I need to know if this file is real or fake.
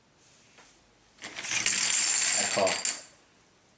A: real